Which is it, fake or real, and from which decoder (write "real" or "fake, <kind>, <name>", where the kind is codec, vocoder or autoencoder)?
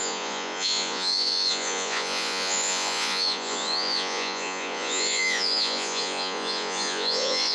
fake, vocoder, Vocos